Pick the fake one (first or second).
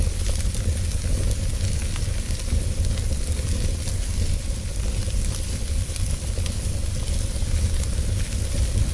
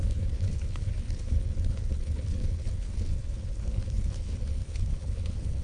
second